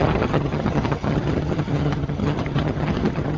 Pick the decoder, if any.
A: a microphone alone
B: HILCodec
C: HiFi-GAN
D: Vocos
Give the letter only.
C